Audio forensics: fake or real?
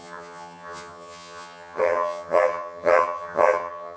fake